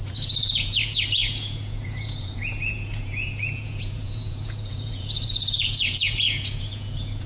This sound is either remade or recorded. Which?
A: remade